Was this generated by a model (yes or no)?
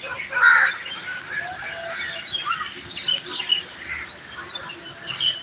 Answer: no